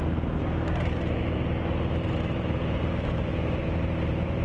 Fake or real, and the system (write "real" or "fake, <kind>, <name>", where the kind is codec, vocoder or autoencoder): fake, vocoder, BigVGAN v2